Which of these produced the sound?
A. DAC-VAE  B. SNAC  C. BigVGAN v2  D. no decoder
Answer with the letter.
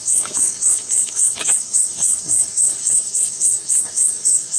B